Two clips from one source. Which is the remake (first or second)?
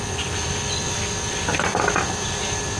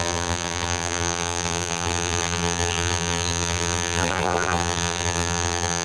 second